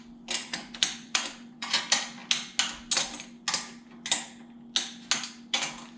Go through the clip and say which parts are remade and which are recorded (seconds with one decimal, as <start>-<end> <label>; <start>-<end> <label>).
0.0-0.4 recorded; 0.4-1.8 remade; 1.8-6.0 recorded

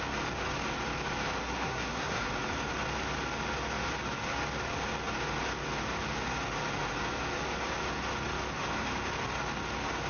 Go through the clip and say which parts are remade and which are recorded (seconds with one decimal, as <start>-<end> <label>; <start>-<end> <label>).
0.0-1.4 recorded; 1.4-2.3 remade; 2.3-10.1 recorded

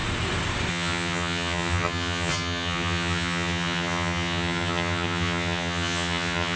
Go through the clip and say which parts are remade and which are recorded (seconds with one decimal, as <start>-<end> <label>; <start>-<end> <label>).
0.0-0.7 recorded; 0.7-6.6 remade

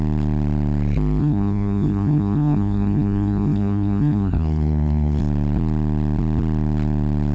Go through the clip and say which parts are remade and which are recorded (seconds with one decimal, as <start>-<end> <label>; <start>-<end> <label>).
0.0-1.2 recorded; 1.2-5.2 remade; 5.2-7.3 recorded